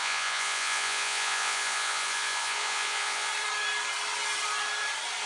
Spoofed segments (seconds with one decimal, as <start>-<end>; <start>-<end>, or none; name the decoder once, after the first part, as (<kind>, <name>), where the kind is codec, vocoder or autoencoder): 0.0-3.3 (vocoder, Vocos)